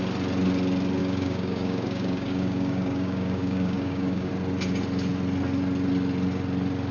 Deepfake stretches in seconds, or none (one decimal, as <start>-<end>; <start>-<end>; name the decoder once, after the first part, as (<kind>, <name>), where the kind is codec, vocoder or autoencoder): 1.0-4.3 (codec, DAC)